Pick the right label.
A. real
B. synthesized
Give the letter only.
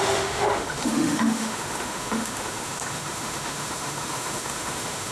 B